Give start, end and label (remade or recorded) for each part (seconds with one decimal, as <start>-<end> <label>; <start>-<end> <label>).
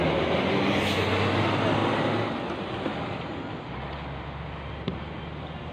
0.0-5.7 recorded